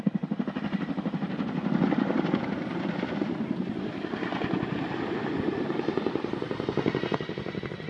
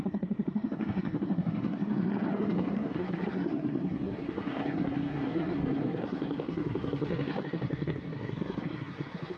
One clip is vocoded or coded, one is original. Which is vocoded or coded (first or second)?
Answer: second